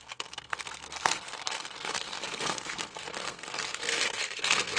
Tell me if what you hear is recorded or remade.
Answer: remade